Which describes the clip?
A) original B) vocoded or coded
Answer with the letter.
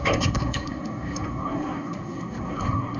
B